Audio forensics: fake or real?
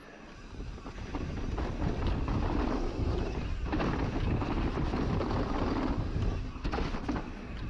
real